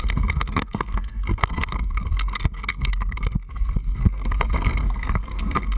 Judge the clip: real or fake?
fake